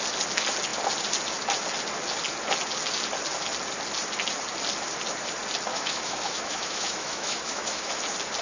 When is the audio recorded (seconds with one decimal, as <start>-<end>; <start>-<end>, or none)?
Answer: 0.0-5.7; 8.0-8.4